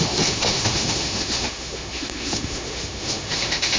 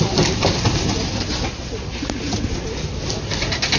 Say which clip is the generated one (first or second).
first